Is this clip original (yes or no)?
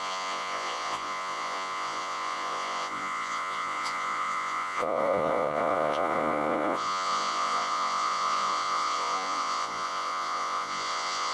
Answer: no